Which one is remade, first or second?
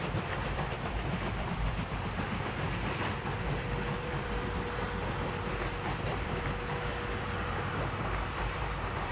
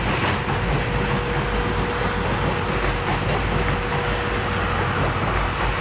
first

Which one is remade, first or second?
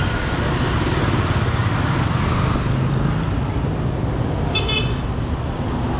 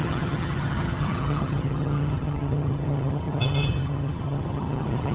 second